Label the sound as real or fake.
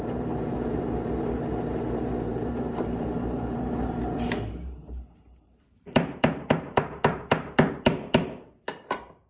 fake